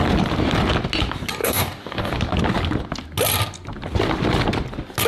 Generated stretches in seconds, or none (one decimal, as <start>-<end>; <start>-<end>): 1.4-2.1